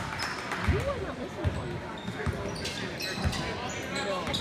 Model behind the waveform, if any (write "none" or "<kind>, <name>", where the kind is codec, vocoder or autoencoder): none